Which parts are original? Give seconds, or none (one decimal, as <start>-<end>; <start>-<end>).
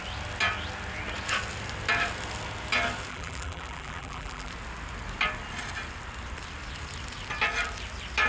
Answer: 0.0-3.1; 4.5-8.3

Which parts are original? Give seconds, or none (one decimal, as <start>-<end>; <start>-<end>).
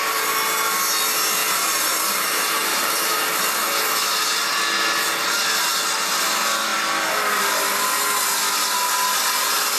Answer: 0.0-1.4; 2.9-9.8